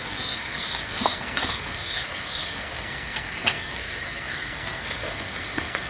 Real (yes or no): no